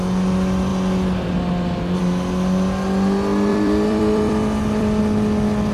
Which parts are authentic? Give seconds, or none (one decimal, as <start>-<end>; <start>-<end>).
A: 0.0-3.5; 5.0-5.7